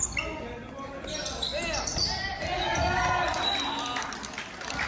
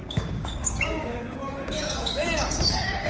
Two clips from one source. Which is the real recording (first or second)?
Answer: first